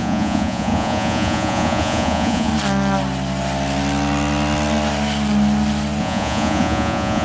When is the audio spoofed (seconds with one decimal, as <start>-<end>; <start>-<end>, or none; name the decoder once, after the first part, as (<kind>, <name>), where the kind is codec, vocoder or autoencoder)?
0.0-2.5 (vocoder, Vocos); 6.0-7.2